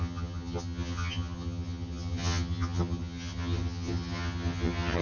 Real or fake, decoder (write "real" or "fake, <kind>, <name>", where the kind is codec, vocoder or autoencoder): fake, vocoder, HiFi-GAN